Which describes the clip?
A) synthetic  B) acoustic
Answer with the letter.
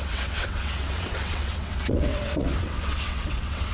A